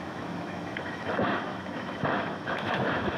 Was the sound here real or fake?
fake